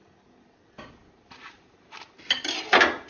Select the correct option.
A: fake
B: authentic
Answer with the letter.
B